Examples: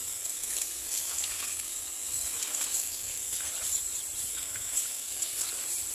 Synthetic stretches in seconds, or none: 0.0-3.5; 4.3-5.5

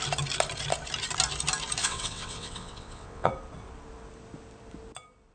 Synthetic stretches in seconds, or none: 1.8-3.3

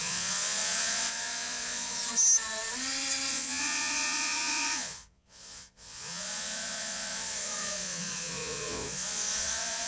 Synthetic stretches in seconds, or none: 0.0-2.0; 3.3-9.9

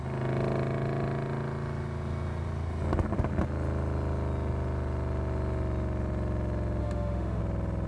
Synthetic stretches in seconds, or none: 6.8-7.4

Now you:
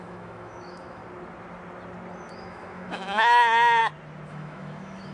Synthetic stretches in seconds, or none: 0.0-1.0; 2.3-3.8; 4.3-5.1

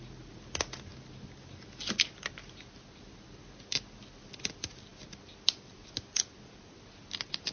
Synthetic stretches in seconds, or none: none

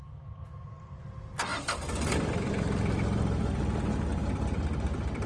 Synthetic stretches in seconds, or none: 1.5-2.5